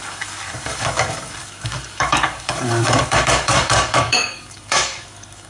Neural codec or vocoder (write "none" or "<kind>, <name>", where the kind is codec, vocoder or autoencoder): codec, DAC